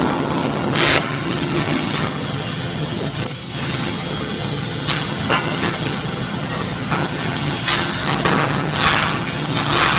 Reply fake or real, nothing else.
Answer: fake